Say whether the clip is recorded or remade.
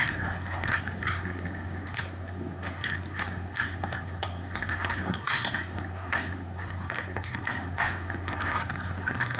remade